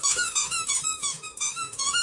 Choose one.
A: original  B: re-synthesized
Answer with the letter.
B